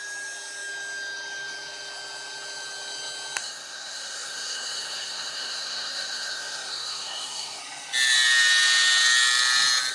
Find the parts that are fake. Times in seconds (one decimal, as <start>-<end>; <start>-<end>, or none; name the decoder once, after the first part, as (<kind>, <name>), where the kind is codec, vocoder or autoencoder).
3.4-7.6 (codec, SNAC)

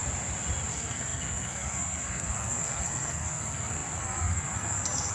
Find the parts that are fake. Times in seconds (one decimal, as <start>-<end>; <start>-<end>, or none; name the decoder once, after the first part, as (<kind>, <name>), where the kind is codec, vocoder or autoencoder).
0.7-5.1 (codec, SNAC)

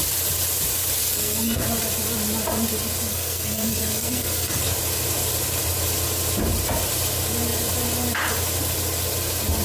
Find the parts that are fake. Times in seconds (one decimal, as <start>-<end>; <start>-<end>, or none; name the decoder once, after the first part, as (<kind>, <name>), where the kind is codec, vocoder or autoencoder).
1.0-1.6 (codec, SNAC); 3.1-4.6

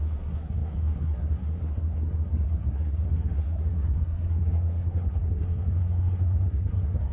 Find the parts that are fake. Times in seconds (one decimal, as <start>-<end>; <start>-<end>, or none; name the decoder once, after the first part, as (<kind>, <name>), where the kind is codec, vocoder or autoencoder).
0.0-7.1 (codec, SNAC)